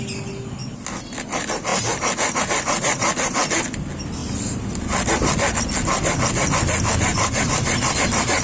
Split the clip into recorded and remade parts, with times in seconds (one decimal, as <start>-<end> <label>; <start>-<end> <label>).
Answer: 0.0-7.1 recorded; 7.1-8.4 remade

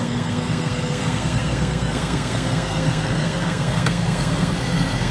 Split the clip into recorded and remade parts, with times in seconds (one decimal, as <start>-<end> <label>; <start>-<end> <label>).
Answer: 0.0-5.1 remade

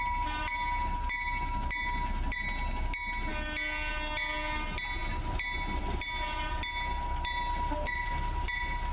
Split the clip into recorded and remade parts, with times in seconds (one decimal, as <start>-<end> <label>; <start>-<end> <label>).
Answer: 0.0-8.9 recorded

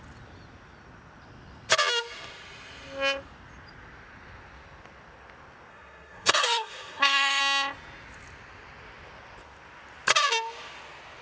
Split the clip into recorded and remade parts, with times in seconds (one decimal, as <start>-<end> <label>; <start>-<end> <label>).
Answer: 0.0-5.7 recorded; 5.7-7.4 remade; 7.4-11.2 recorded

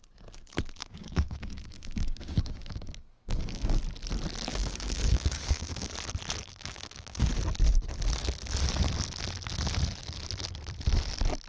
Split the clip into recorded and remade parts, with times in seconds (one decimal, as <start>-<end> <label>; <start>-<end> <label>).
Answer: 0.0-0.8 recorded; 0.8-3.8 remade; 3.8-4.5 recorded; 4.5-5.9 remade; 5.9-6.5 recorded; 6.5-7.3 remade; 7.3-11.5 recorded

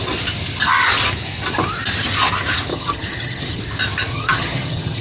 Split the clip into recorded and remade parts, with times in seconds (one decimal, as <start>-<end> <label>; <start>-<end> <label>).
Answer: 0.0-2.7 recorded; 2.7-3.6 remade; 3.6-4.1 recorded; 4.1-5.0 remade